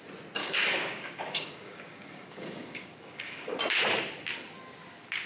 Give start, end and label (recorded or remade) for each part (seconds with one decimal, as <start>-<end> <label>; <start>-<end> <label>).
0.0-0.4 recorded; 0.4-3.6 remade; 3.6-5.3 recorded